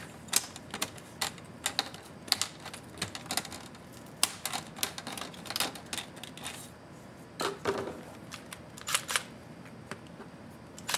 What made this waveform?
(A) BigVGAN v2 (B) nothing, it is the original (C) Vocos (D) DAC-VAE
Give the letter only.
B